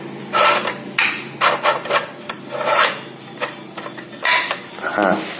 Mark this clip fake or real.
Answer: real